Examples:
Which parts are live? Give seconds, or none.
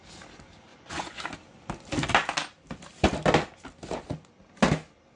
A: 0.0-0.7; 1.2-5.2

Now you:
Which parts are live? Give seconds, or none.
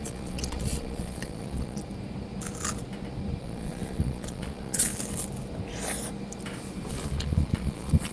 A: 1.8-3.4; 4.9-6.9